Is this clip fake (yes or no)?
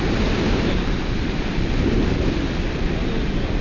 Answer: no